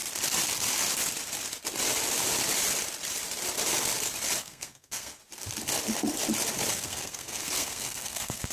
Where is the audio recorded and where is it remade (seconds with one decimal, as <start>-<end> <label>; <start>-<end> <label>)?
0.0-4.4 recorded; 4.4-5.2 remade; 5.2-6.7 recorded; 6.7-8.5 remade